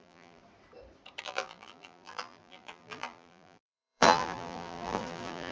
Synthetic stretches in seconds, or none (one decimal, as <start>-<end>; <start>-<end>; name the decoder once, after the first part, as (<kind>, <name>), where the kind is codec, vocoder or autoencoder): 0.0-0.4 (vocoder, BigVGAN v2); 1.2-5.5